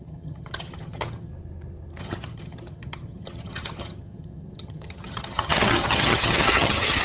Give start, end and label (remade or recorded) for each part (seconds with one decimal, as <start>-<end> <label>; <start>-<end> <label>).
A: 0.0-1.3 remade; 1.3-2.0 recorded; 2.0-7.0 remade